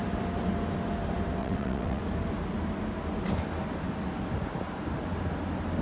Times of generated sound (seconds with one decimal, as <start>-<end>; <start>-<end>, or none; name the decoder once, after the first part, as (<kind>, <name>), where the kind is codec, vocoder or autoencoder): 1.4-2.0 (vocoder, WaveNeXt)